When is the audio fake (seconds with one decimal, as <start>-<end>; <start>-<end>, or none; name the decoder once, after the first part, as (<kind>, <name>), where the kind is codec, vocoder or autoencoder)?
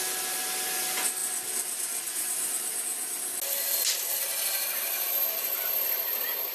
none